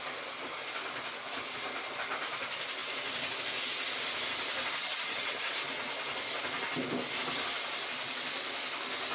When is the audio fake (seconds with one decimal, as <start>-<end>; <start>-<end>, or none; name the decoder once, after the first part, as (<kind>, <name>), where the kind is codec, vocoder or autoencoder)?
4.8-5.5 (vocoder, HiFi-GAN)